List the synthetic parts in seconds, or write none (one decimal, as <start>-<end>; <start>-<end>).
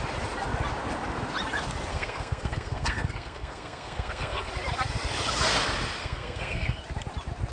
1.9-4.5; 6.0-6.8